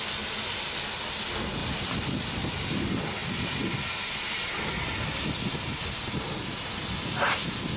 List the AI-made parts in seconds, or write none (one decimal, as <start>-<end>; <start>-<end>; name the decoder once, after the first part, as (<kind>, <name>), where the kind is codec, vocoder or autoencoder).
1.6-2.5 (vocoder, BigVGAN v2); 3.2-4.0